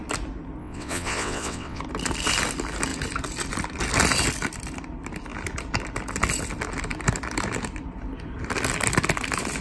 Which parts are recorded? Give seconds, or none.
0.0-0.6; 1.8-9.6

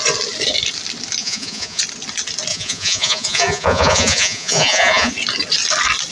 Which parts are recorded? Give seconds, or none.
0.0-1.2; 1.8-2.5; 5.1-6.1

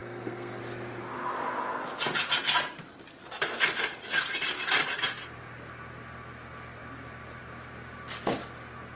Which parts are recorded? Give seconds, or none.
0.6-9.0

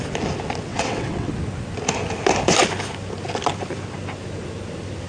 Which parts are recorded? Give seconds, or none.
0.0-0.7; 1.3-5.1

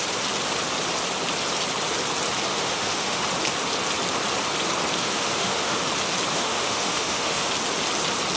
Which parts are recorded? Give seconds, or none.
0.0-2.5; 3.2-5.0; 5.8-6.3; 7.5-8.4